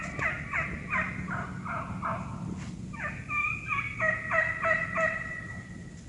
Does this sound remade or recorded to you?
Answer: recorded